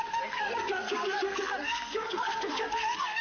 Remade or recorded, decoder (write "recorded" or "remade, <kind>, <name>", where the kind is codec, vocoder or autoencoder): remade, codec, SNAC